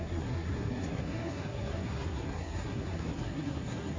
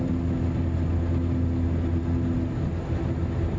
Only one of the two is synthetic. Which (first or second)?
first